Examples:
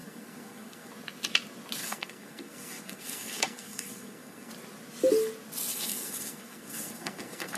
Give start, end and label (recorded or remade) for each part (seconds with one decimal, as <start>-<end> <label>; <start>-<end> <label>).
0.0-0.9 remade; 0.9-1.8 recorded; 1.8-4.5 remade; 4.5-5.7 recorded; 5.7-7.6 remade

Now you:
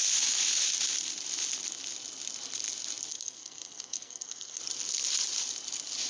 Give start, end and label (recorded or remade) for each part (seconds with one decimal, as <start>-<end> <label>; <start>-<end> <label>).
0.0-3.1 recorded; 3.1-4.6 remade; 4.6-6.1 recorded

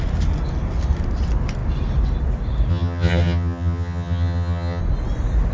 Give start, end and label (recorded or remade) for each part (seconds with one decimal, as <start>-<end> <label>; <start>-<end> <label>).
0.0-2.7 recorded; 2.7-4.8 remade; 4.8-5.5 recorded

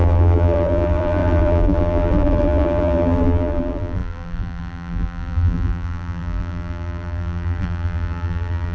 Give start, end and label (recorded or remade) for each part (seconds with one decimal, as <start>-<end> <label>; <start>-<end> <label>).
0.0-8.7 remade

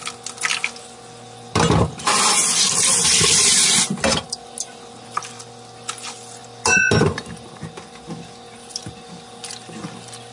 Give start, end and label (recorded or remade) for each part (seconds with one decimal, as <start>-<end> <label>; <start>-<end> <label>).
0.0-10.3 recorded

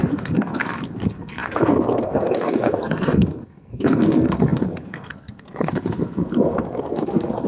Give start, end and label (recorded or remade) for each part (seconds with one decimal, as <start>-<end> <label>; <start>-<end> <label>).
0.0-7.5 remade

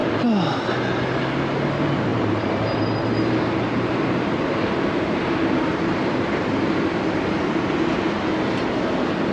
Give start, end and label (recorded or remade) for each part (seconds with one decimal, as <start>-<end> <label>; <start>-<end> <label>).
0.0-0.6 remade; 0.6-2.1 recorded; 2.1-6.5 remade; 6.5-9.3 recorded

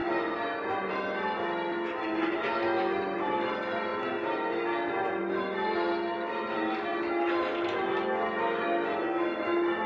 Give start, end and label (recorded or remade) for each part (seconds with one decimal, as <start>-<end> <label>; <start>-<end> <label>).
0.0-9.9 recorded